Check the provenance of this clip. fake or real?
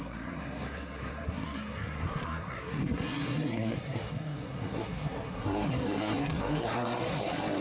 fake